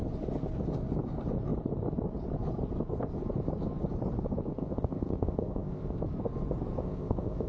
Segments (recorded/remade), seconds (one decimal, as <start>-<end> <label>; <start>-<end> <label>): 0.0-4.5 recorded; 4.5-6.0 remade; 6.0-6.8 recorded; 6.8-7.5 remade